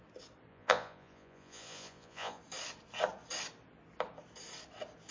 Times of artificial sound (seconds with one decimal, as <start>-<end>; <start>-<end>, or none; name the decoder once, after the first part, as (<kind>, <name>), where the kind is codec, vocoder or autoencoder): 0.5-2.4 (vocoder, Vocos)